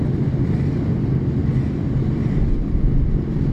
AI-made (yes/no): no